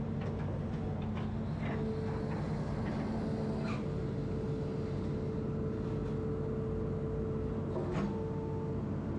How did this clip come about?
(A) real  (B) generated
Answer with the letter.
A